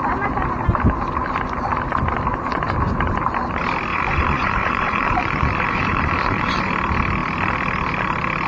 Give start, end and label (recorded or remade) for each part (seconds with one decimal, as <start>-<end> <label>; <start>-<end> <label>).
0.0-3.9 recorded; 3.9-6.7 remade; 6.7-8.5 recorded